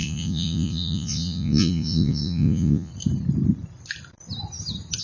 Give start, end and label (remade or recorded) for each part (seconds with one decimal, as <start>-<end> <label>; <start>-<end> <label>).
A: 0.0-2.9 remade; 2.9-5.0 recorded